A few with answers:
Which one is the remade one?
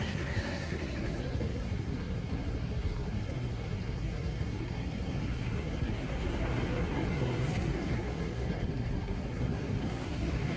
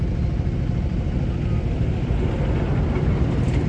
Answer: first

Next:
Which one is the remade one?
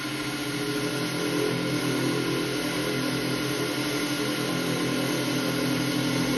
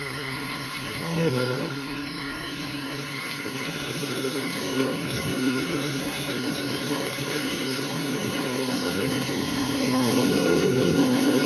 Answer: second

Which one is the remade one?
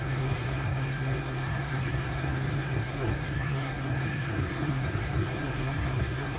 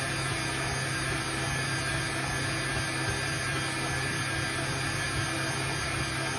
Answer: first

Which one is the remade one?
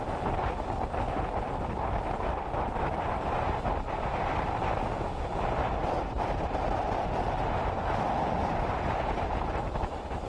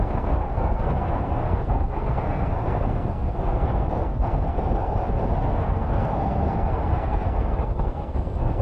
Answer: second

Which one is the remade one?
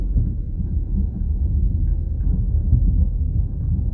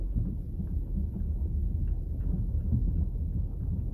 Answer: first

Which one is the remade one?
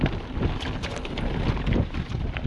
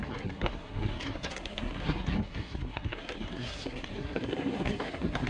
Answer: second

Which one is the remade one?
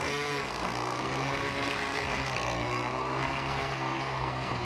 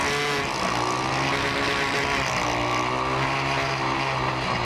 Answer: first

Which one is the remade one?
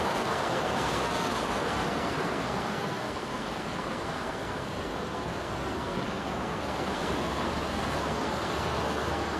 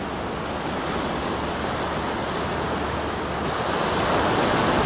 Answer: first